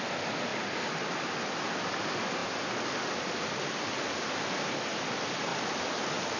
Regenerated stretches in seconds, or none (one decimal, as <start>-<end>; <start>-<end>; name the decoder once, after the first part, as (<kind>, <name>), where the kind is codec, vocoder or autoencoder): none